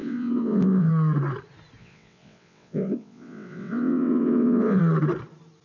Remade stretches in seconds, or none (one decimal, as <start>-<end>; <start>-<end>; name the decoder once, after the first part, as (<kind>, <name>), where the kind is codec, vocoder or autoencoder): 0.0-0.9 (vocoder, WaveNeXt); 1.8-4.8